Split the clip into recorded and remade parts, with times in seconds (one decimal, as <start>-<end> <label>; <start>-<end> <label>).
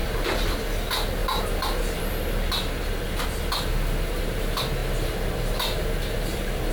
0.0-0.6 remade; 0.6-6.7 recorded